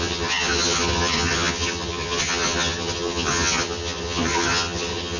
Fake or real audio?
fake